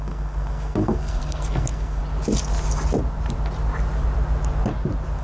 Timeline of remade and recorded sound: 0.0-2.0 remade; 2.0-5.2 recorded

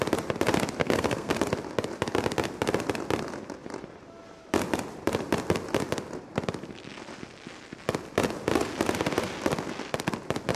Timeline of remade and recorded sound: 0.0-0.8 recorded; 0.8-1.3 remade; 1.3-10.6 recorded